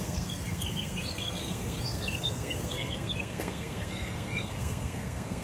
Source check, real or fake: fake